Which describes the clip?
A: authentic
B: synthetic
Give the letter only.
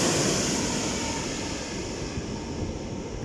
A